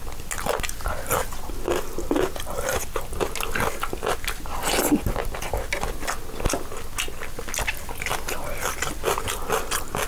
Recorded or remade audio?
recorded